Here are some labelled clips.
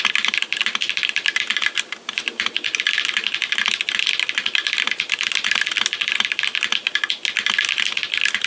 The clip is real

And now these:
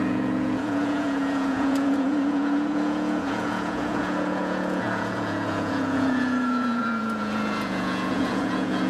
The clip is fake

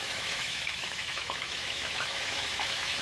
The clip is fake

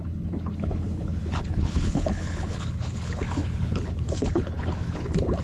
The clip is fake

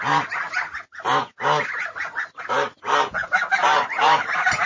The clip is real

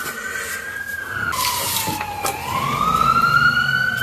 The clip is real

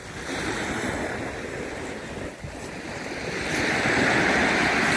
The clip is real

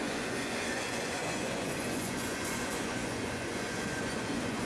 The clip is fake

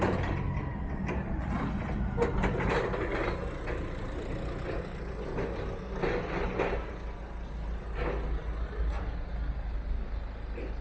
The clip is real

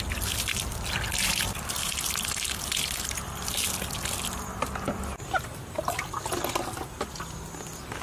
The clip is real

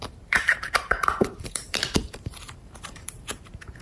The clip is fake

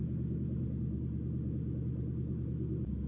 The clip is real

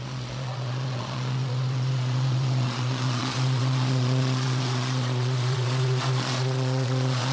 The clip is fake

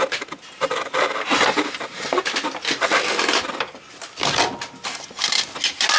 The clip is real